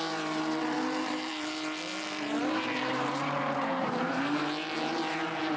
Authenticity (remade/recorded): remade